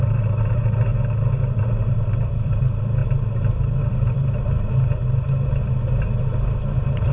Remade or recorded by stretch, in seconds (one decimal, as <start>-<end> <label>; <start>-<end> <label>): 0.0-0.9 remade; 0.9-1.5 recorded; 1.5-7.1 remade